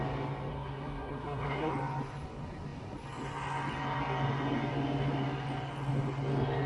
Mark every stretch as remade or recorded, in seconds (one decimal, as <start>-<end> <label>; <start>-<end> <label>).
0.0-0.5 recorded; 0.5-1.7 remade; 1.7-6.7 recorded